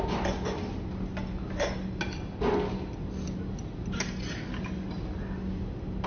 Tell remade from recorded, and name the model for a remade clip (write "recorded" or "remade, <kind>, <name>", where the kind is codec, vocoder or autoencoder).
recorded